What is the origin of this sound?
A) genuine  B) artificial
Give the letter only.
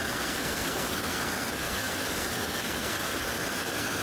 B